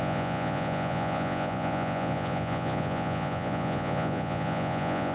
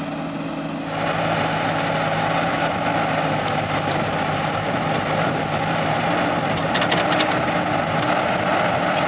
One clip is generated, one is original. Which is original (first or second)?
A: second